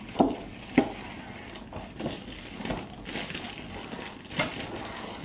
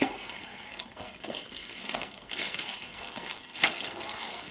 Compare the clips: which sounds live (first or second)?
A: first